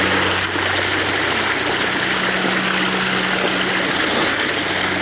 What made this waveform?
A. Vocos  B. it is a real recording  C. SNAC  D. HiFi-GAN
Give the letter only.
B